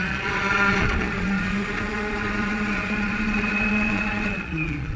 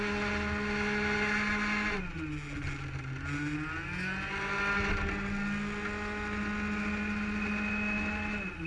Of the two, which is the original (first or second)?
second